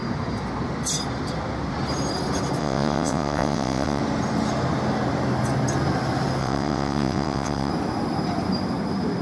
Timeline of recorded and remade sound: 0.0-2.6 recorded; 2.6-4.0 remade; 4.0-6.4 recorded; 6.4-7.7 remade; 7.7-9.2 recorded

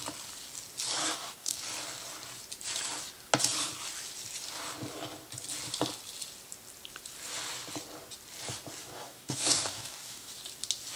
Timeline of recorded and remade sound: 0.0-1.0 recorded; 1.0-1.6 remade; 1.6-8.8 recorded; 8.8-10.3 remade; 10.3-11.0 recorded

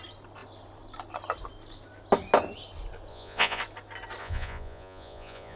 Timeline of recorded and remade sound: 0.0-3.1 recorded; 3.1-3.6 remade; 3.6-4.2 recorded; 4.2-5.6 remade

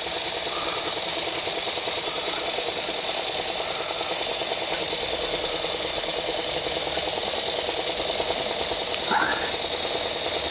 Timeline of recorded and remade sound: 0.0-10.5 recorded

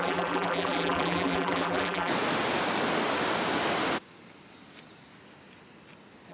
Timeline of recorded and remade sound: 0.0-2.1 remade; 2.1-6.3 recorded

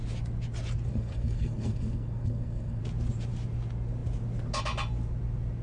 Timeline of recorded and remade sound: 0.0-0.9 recorded; 0.9-2.8 remade; 2.8-5.6 recorded

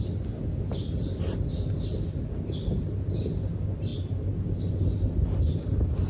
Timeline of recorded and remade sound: 0.0-6.1 recorded